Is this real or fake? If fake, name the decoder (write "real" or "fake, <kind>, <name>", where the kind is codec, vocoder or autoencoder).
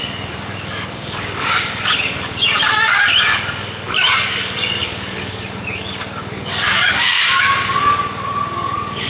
fake, codec, DAC